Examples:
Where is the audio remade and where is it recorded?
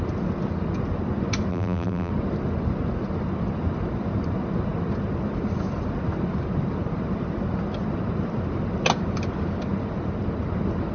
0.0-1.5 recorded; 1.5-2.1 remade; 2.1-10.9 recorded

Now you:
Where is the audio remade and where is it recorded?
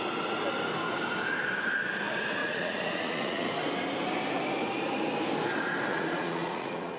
0.0-2.4 recorded; 2.4-3.5 remade; 3.5-5.9 recorded; 5.9-7.0 remade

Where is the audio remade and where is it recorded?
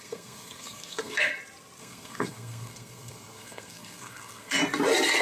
0.0-1.3 remade; 1.3-1.8 recorded; 1.8-4.6 remade; 4.6-5.2 recorded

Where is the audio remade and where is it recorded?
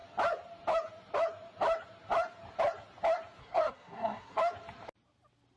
0.0-3.4 recorded; 3.4-4.4 remade; 4.4-5.6 recorded